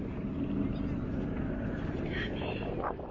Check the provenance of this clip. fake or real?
real